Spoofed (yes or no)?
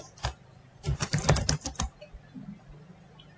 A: no